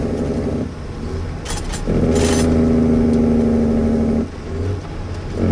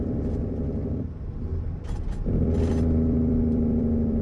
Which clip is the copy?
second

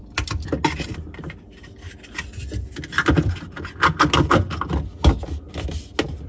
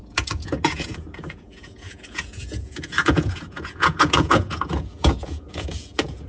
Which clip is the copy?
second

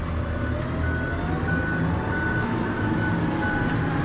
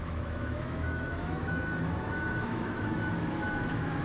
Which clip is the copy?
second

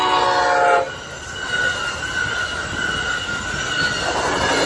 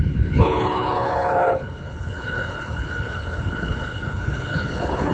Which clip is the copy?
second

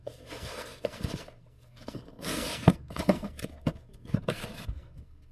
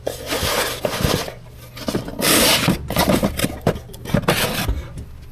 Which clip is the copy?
first